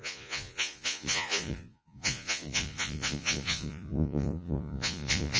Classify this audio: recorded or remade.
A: remade